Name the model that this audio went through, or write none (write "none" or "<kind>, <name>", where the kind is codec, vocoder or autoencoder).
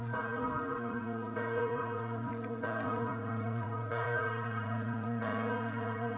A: vocoder, Vocos